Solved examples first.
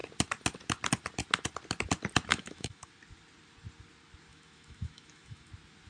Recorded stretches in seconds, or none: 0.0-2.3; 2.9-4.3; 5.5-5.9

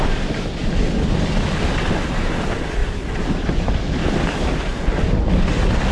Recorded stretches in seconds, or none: 0.0-2.8; 3.7-5.9

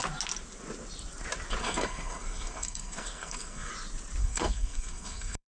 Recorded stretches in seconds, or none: 0.0-1.6; 3.7-4.2

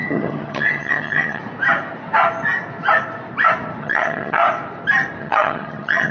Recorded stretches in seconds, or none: 1.4-3.8; 4.4-5.2

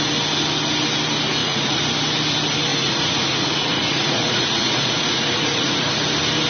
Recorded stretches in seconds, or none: 0.0-1.4; 1.9-2.7; 5.9-6.5

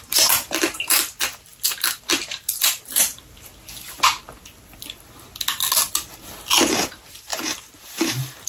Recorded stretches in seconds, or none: 1.5-2.2; 3.5-6.7

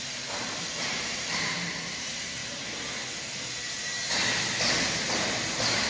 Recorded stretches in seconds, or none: 2.4-5.1

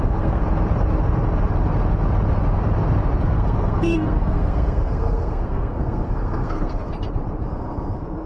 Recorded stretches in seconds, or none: 0.4-3.2; 6.9-7.5